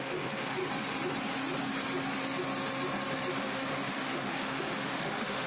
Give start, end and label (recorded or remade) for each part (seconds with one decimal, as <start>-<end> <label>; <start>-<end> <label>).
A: 0.0-0.6 remade; 0.6-3.4 recorded; 3.4-5.5 remade